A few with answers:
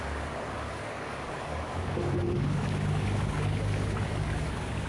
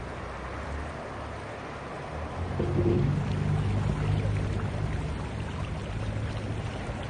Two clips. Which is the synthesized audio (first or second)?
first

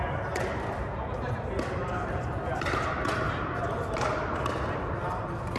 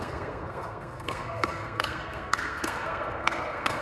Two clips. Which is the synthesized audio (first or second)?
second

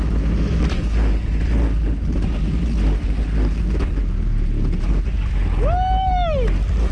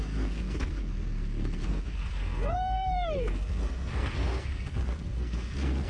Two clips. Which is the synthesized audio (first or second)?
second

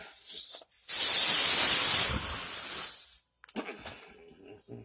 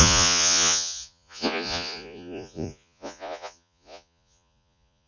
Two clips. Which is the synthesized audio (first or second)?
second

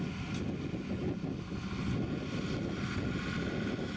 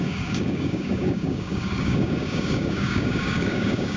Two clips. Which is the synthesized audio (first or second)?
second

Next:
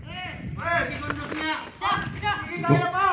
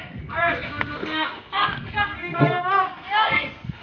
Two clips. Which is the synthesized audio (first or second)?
second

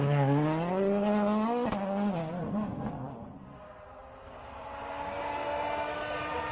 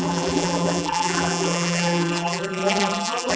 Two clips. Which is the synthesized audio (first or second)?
second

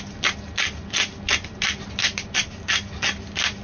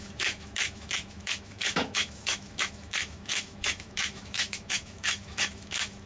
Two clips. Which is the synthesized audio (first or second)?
second